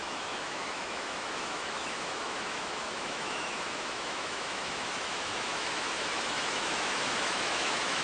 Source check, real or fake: fake